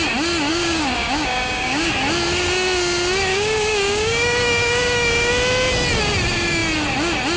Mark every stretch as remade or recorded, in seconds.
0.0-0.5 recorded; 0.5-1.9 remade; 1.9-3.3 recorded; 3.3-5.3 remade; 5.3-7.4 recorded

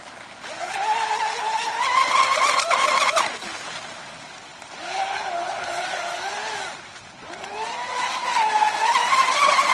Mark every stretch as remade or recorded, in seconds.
0.0-9.7 recorded

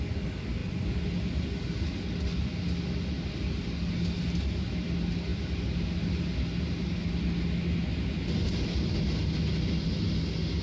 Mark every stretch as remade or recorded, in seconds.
0.0-10.6 recorded

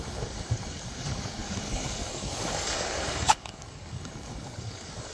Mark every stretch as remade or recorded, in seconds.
0.0-5.1 remade

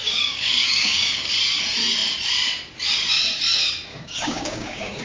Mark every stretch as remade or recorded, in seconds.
0.0-1.3 remade; 1.3-3.9 recorded; 3.9-5.0 remade